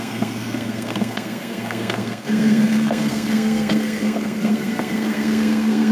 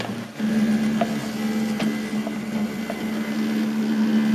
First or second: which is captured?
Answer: second